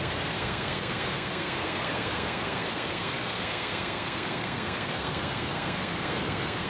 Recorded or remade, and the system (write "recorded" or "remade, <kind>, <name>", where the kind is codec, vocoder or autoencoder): remade, codec, SNAC